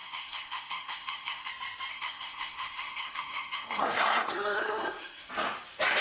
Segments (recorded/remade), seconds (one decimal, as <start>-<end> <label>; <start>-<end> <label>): 0.0-1.5 remade; 1.5-1.9 recorded; 1.9-5.3 remade; 5.3-6.0 recorded